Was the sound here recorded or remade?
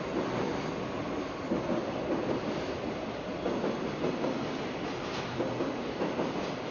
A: recorded